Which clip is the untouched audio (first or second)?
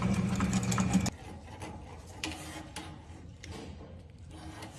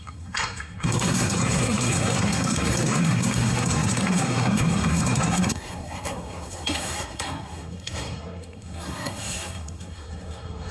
first